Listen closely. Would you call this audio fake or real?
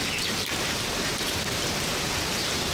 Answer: fake